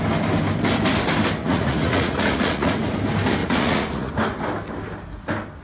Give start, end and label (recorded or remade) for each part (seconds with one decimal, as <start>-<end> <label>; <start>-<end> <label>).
0.0-1.4 recorded; 1.4-2.7 remade; 2.7-3.4 recorded; 3.4-4.1 remade; 4.1-5.6 recorded